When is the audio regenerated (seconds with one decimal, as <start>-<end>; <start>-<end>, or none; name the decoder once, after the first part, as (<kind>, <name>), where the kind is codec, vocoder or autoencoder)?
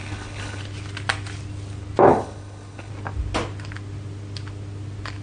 0.0-0.6 (codec, HILCodec); 2.1-2.9